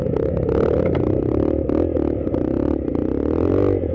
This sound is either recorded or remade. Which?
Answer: recorded